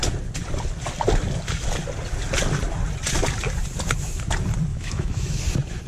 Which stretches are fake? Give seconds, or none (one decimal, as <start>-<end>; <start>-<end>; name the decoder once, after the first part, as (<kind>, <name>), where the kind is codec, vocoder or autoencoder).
4.7-5.4 (autoencoder, DAC-VAE)